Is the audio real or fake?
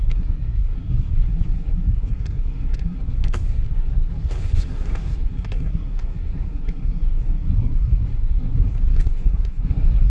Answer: fake